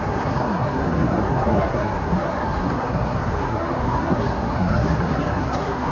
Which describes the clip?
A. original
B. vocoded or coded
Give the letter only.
B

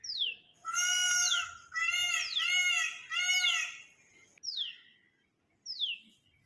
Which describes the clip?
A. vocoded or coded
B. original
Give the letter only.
B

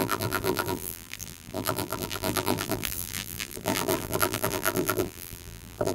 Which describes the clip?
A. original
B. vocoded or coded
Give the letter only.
B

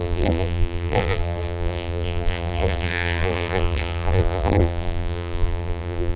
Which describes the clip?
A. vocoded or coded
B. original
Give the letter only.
A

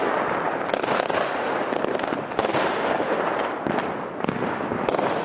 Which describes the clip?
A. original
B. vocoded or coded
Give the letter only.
A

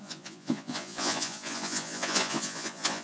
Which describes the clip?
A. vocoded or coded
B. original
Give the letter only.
A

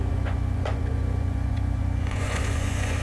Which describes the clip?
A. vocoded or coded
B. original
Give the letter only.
A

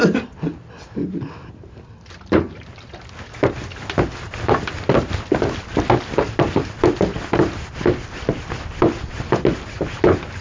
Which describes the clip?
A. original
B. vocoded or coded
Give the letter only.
A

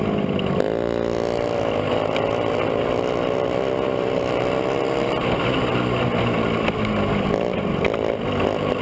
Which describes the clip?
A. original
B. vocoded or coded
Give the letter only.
A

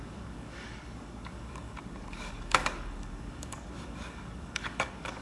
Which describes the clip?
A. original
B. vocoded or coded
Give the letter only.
B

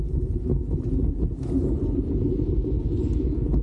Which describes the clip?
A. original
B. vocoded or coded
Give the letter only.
A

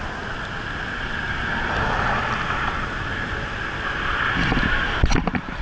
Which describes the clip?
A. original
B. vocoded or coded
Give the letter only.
A